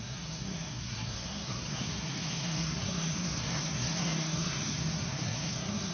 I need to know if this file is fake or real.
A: fake